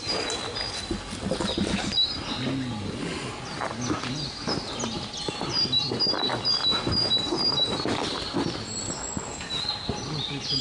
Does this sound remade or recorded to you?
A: recorded